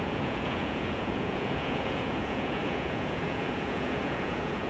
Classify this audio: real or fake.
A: fake